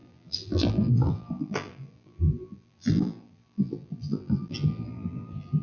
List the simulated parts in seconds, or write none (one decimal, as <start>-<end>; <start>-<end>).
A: 0.0-5.6